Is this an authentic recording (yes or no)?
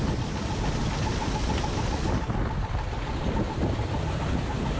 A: yes